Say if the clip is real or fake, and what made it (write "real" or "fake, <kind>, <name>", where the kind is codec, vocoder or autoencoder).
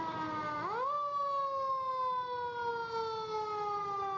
real